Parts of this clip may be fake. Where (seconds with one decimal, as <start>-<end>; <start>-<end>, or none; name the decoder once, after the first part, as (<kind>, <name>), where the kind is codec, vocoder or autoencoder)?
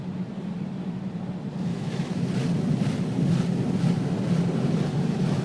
1.7-2.2 (autoencoder, DAC-VAE)